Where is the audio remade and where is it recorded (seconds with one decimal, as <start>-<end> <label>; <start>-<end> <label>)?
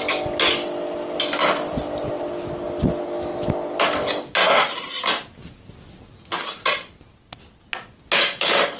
0.0-1.4 recorded; 1.4-2.0 remade; 2.0-8.8 recorded